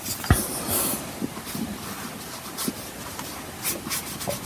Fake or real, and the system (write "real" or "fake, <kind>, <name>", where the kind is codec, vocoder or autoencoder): real